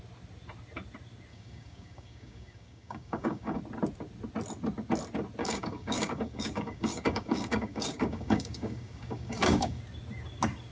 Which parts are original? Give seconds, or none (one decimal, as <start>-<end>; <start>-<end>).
0.0-1.3; 3.6-5.4; 9.8-10.7